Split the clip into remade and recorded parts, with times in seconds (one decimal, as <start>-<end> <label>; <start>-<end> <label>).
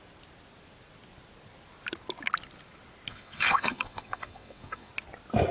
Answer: 0.0-3.1 recorded; 3.1-4.9 remade; 4.9-5.5 recorded